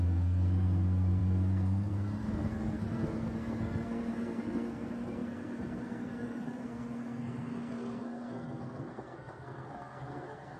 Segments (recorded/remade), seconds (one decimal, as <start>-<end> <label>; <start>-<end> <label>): 0.0-10.6 remade